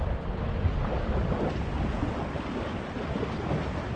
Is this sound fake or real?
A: real